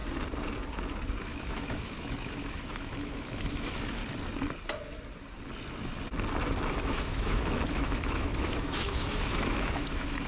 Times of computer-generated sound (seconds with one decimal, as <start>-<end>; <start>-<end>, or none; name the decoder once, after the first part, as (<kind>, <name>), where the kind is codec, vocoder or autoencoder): 1.2-4.0 (autoencoder, DAC-VAE); 6.7-10.3

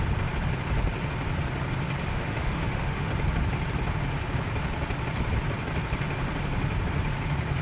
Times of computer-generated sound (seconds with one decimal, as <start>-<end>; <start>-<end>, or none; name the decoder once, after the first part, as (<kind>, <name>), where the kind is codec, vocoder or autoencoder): 2.1-3.1 (autoencoder, DAC-VAE)

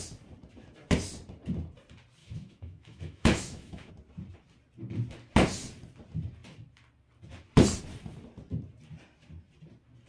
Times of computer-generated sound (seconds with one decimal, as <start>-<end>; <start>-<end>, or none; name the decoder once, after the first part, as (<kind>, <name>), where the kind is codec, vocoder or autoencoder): 2.2-3.9 (autoencoder, DAC-VAE)

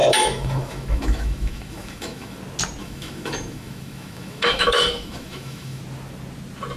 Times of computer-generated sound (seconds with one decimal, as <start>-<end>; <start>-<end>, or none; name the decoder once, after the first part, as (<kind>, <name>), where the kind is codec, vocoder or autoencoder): 0.0-2.4 (autoencoder, DAC-VAE); 2.8-5.8

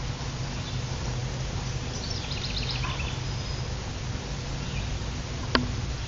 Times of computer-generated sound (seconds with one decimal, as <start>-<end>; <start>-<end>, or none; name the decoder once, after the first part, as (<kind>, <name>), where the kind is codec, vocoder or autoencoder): none